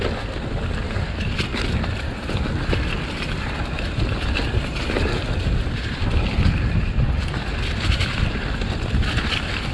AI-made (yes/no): no